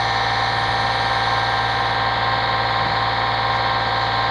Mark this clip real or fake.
real